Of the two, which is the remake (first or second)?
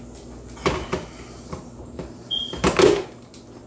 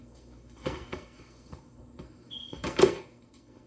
second